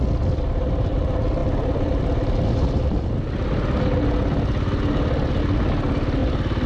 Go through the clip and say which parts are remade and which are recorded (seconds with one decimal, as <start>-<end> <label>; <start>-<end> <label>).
0.0-6.7 recorded